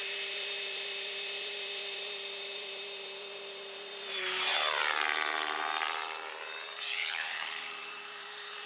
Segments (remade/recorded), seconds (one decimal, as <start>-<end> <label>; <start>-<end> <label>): 0.0-8.7 remade